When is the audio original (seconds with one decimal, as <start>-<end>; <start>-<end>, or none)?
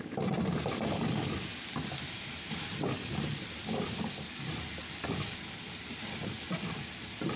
0.0-7.4